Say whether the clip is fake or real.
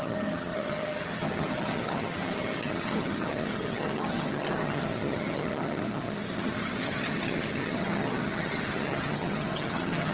fake